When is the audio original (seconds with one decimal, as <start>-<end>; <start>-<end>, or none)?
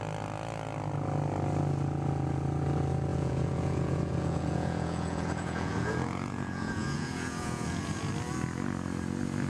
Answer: 0.0-3.1; 8.1-9.5